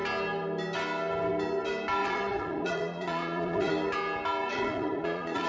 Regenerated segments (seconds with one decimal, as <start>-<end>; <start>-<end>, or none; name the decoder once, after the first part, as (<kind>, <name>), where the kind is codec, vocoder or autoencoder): 2.0-3.7 (vocoder, Vocos); 4.5-5.5